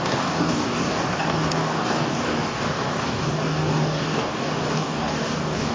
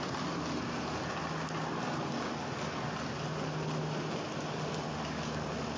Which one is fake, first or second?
first